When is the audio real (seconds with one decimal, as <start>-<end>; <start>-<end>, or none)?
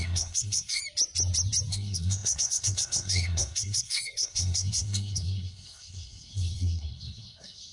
0.8-1.7